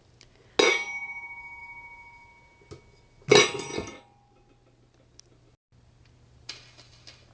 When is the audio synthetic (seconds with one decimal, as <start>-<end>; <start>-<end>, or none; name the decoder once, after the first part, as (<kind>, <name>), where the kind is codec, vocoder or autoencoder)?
none